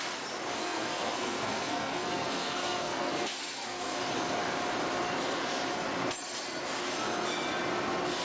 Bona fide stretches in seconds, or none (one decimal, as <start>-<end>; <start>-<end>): 0.0-0.6; 4.0-8.2